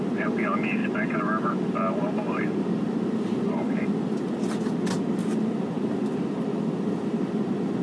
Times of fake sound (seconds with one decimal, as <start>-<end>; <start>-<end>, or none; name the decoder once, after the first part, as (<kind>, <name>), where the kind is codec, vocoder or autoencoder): none